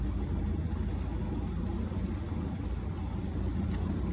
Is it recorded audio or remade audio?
recorded